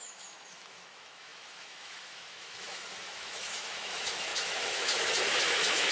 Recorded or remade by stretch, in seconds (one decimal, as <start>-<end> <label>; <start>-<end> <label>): 0.0-5.9 remade